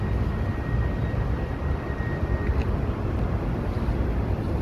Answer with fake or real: real